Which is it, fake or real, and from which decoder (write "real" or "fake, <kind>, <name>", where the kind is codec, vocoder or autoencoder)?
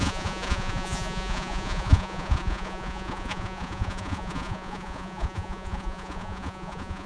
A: fake, vocoder, Vocos